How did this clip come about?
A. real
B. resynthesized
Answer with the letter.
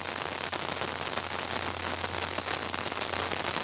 A